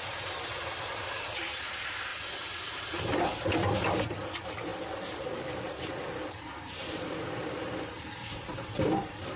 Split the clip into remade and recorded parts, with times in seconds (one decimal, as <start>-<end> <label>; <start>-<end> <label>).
0.0-2.1 remade; 2.1-2.7 recorded; 2.7-9.4 remade